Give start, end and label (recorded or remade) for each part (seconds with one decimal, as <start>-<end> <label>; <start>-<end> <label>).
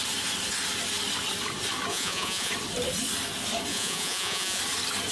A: 0.0-1.9 recorded; 1.9-2.5 remade; 2.5-3.7 recorded; 3.7-4.6 remade; 4.6-5.1 recorded